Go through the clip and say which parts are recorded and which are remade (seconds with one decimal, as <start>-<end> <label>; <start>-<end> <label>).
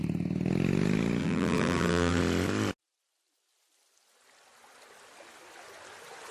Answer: 0.0-1.2 recorded; 1.2-2.2 remade; 2.2-6.3 recorded